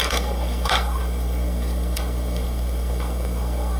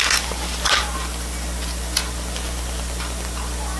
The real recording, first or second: second